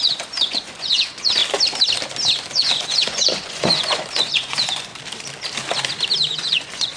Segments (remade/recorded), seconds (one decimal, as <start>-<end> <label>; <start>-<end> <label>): 0.0-1.4 remade; 1.4-2.4 recorded; 2.4-4.9 remade; 4.9-6.3 recorded; 6.3-7.0 remade